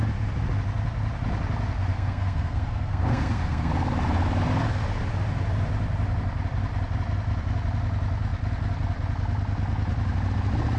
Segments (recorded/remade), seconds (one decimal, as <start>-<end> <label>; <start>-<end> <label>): 0.0-1.9 recorded; 1.9-3.7 remade; 3.7-10.8 recorded